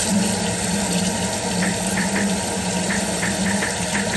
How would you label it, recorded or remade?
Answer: recorded